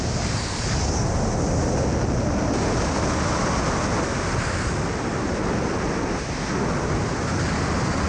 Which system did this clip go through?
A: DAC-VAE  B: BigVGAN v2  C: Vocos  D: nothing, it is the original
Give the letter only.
D